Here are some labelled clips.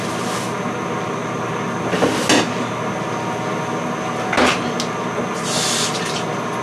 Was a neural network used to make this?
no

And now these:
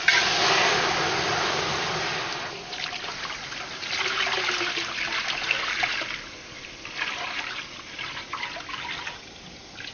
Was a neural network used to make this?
no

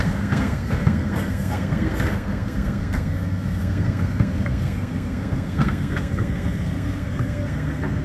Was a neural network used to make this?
yes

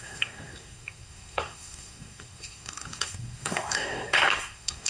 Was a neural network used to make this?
yes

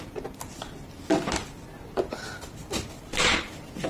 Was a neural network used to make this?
no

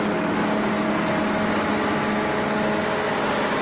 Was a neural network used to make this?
no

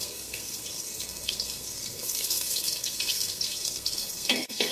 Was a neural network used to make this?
yes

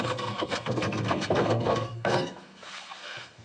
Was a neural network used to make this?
yes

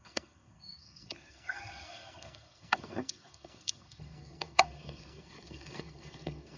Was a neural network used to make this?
yes